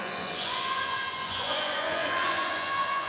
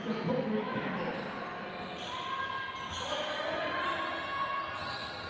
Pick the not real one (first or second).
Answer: first